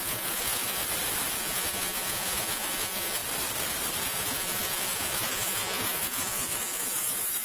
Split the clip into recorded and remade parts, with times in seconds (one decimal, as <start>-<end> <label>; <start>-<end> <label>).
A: 0.0-0.8 remade; 0.8-1.4 recorded; 1.4-3.2 remade; 3.2-4.0 recorded; 4.0-7.4 remade